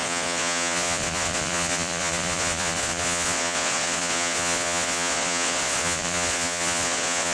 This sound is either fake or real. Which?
fake